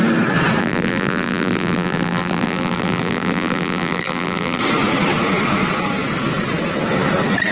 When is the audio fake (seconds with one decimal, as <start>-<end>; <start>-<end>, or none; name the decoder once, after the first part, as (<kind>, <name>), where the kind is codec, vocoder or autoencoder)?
0.6-4.6 (vocoder, BigVGAN v2)

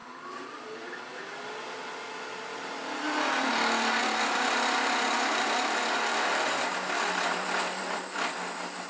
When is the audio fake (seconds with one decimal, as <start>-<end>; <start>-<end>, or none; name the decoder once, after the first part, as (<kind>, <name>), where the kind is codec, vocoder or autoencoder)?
0.0-1.0 (vocoder, BigVGAN v2); 2.5-3.5; 4.0-8.3

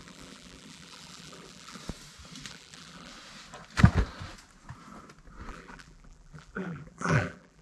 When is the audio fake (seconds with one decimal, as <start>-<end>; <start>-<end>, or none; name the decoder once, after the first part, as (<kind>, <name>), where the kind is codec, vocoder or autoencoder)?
0.0-1.8 (vocoder, BigVGAN v2); 2.5-3.1; 5.5-7.6

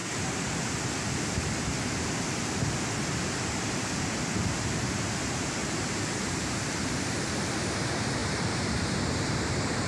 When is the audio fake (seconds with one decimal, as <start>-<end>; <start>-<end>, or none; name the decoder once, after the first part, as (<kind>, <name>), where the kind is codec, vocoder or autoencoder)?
0.0-0.7 (vocoder, BigVGAN v2); 5.6-6.9; 8.2-9.9

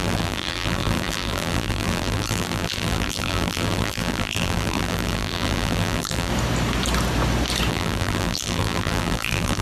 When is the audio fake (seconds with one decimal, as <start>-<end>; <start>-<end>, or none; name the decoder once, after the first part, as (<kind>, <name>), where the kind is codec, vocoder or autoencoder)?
0.0-6.3 (vocoder, BigVGAN v2); 7.7-9.6

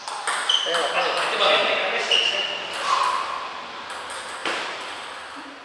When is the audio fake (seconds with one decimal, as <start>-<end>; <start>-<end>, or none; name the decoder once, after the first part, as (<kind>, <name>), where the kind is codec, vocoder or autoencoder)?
1.6-2.2 (vocoder, BigVGAN v2); 4.4-5.1